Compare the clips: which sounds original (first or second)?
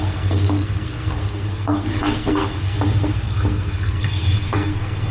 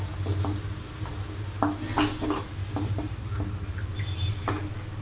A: second